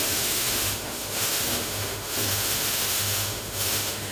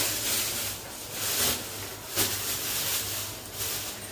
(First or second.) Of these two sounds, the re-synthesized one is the first